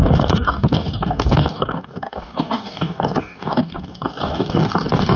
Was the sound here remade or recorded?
remade